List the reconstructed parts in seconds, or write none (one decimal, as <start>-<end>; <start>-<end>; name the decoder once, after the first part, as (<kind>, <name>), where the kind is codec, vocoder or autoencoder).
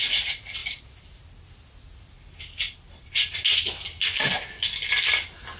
none